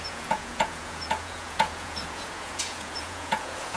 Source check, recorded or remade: remade